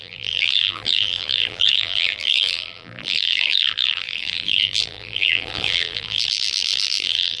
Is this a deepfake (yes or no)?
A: yes